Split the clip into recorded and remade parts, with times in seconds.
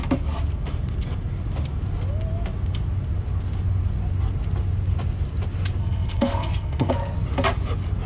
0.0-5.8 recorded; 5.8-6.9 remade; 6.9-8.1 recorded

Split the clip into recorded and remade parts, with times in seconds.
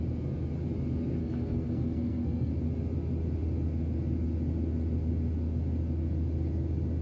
0.0-1.2 recorded; 1.2-2.5 remade; 2.5-7.0 recorded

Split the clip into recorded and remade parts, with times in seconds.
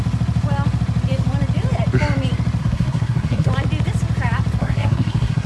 0.0-2.6 recorded; 2.6-3.5 remade; 3.5-4.6 recorded; 4.6-5.5 remade